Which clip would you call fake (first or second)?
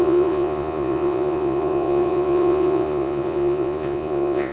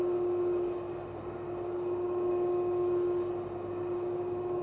first